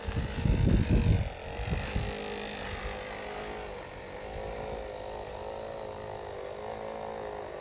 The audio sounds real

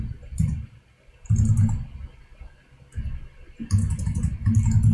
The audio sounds real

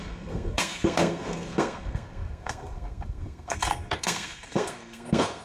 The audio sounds fake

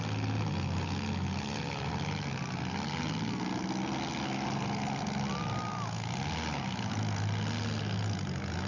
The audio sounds real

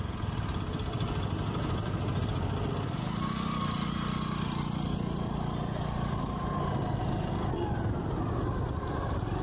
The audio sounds real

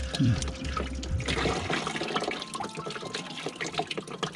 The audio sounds real